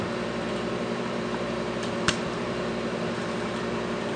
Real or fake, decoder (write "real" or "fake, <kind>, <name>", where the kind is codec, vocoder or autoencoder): fake, vocoder, BigVGAN v2